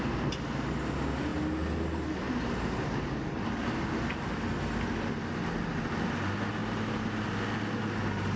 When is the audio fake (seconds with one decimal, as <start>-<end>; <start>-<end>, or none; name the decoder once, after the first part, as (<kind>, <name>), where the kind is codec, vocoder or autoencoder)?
6.6-7.3 (vocoder, BigVGAN v2)